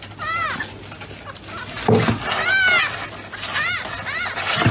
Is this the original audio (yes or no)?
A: yes